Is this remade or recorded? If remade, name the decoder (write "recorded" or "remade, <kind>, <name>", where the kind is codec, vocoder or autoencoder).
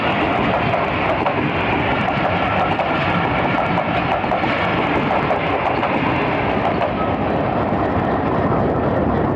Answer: recorded